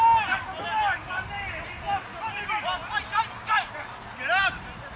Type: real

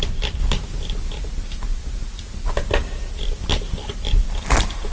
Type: real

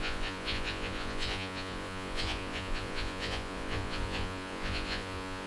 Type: fake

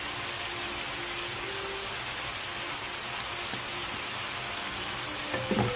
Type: real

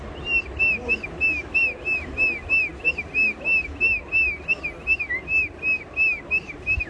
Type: real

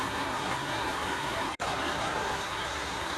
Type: fake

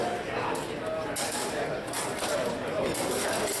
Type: real